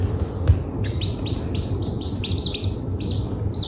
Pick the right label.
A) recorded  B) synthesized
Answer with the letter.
A